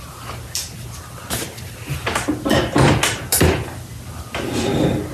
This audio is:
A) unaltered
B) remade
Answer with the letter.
A